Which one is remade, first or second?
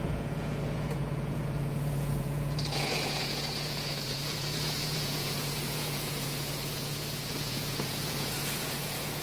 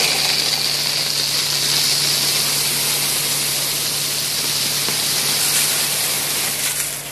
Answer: first